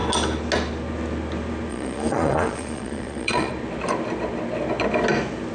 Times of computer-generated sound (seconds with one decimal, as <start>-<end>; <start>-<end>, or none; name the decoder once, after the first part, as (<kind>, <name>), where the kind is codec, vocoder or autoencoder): 1.7-3.5 (vocoder, Vocos)